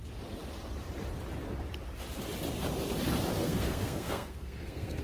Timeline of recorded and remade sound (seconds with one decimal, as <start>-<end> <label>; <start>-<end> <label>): 0.0-3.4 recorded; 3.4-5.0 remade